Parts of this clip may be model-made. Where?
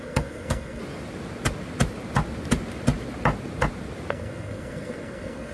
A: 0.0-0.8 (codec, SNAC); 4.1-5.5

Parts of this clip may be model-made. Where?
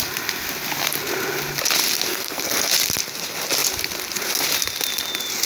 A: 2.1-2.7 (codec, SNAC)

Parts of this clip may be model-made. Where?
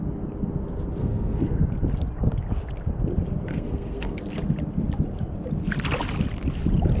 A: 1.0-1.6 (codec, SNAC); 3.5-4.2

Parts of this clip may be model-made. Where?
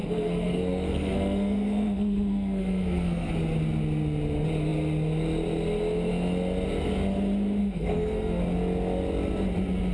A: 0.0-3.3 (codec, SNAC); 7.6-8.4